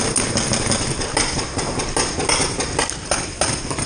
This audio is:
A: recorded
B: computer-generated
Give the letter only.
A